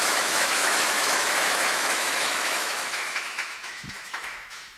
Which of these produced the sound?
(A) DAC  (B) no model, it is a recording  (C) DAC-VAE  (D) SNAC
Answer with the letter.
C